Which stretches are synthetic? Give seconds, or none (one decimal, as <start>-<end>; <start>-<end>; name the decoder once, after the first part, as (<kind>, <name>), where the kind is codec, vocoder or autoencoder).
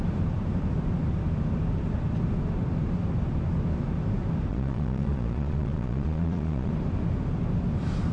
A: 4.5-6.7 (vocoder, Vocos)